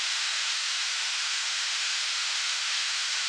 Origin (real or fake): fake